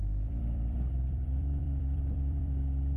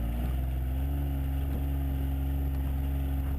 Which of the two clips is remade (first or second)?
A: first